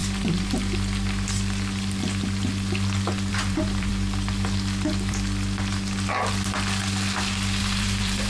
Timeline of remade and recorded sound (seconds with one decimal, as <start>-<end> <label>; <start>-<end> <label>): 0.0-3.3 recorded; 3.3-3.9 remade; 3.9-7.6 recorded; 7.6-8.3 remade